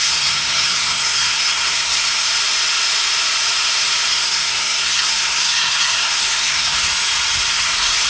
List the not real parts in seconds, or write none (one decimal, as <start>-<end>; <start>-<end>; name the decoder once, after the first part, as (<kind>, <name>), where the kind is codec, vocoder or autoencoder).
0.0-2.3 (codec, SNAC); 4.1-6.9; 7.5-8.1

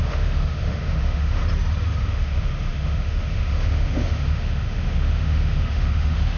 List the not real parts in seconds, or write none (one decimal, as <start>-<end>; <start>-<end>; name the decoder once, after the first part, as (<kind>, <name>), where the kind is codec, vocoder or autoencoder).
0.0-1.4 (autoencoder, DAC-VAE); 2.0-6.4